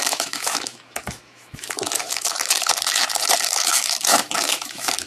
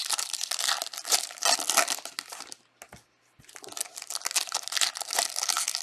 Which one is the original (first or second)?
second